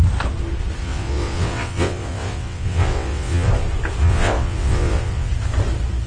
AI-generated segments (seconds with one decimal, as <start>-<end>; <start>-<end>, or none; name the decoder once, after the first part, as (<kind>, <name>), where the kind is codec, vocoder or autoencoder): 0.8-3.5 (vocoder, WaveNeXt); 4.0-5.3